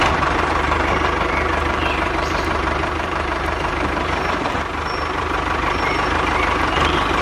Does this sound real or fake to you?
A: fake